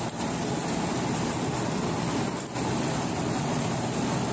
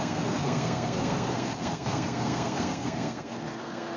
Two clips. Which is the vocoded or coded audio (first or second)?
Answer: second